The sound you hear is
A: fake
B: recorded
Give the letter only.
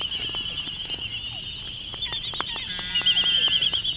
B